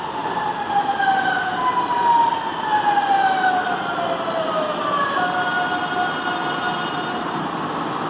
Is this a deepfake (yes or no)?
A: no